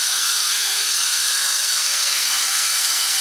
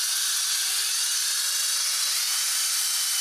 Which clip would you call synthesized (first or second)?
first